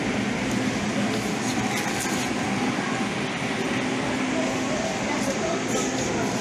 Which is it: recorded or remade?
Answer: recorded